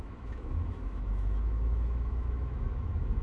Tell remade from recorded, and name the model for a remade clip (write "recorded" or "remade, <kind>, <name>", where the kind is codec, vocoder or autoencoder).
remade, autoencoder, DAC-VAE